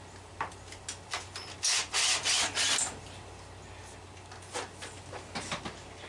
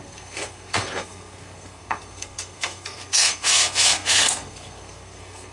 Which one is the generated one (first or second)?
second